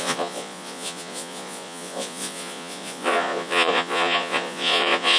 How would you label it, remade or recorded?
remade